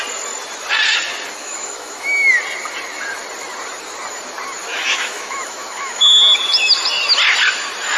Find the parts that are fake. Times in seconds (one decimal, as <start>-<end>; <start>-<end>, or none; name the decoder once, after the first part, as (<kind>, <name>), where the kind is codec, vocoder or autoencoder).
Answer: 1.4-2.3 (autoencoder, DAC-VAE); 4.7-6.2

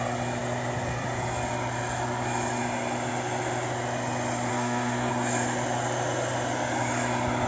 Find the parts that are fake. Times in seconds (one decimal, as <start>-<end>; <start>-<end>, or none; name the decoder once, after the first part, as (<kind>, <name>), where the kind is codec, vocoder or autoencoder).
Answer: 4.5-5.1 (codec, SNAC)

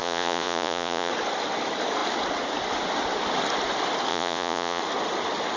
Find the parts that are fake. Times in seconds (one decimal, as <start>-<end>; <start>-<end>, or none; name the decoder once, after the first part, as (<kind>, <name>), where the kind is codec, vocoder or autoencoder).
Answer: 0.0-1.1 (vocoder, Vocos); 4.1-4.8

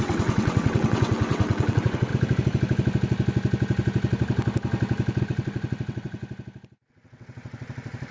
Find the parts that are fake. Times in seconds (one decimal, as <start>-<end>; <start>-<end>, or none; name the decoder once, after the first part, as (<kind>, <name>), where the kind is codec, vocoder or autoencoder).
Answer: 0.0-2.1 (vocoder, WaveNeXt); 5.2-6.2; 6.9-8.1